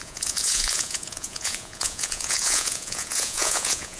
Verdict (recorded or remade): remade